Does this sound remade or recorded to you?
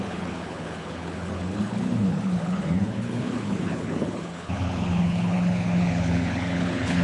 remade